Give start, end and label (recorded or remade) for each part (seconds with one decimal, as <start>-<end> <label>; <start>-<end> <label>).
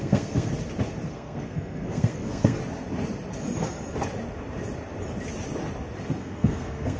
0.0-0.5 remade; 0.5-1.1 recorded; 1.1-2.6 remade; 2.6-6.2 recorded; 6.2-7.0 remade